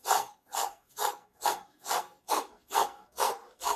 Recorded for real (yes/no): no